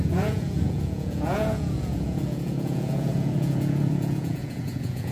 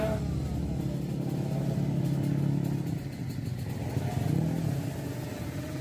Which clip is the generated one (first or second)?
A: first